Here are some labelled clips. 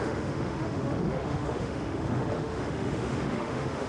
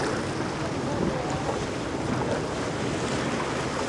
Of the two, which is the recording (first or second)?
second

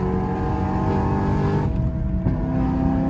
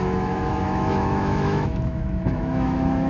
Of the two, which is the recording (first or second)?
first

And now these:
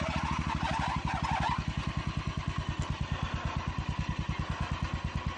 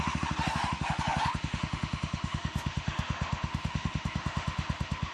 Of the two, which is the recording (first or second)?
first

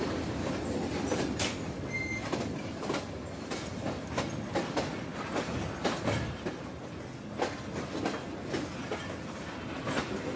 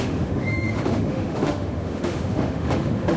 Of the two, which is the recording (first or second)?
first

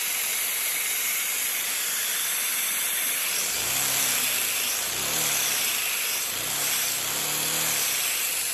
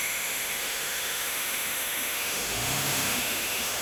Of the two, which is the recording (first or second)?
first